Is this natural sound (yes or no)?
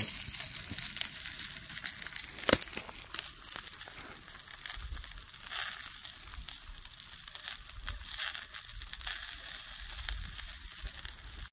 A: yes